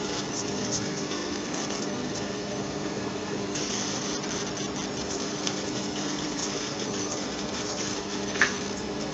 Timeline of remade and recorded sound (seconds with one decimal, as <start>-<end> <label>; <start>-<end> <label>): 0.0-4.0 remade; 4.0-5.0 recorded; 5.0-9.1 remade

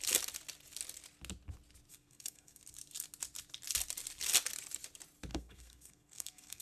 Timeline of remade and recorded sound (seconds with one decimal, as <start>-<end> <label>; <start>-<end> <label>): 0.0-1.9 recorded; 1.9-2.6 remade; 2.6-5.3 recorded; 5.3-6.6 remade

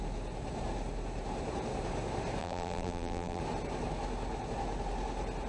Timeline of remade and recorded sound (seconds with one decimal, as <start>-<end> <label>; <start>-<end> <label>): 0.0-2.4 recorded; 2.4-3.4 remade; 3.4-5.5 recorded

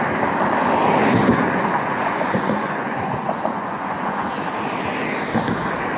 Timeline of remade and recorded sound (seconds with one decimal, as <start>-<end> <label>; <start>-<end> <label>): 0.0-1.2 recorded; 1.2-4.4 remade; 4.4-6.0 recorded